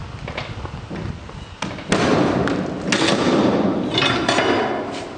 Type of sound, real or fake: real